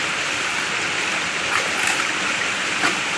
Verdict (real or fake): real